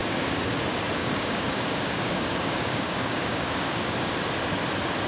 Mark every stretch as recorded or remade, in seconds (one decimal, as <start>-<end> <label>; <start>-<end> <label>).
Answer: 0.0-0.6 remade; 0.6-1.0 recorded; 1.0-4.1 remade; 4.1-5.1 recorded